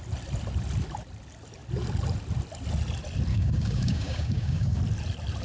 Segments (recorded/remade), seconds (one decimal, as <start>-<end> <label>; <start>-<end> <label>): 0.0-3.3 recorded; 3.3-4.8 remade; 4.8-5.4 recorded